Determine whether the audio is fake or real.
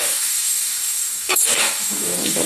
fake